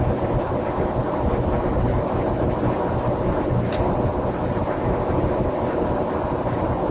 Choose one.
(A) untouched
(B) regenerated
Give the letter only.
A